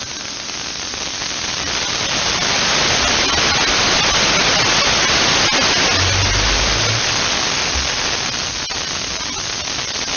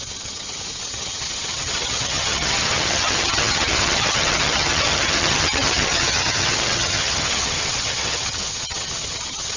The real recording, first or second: first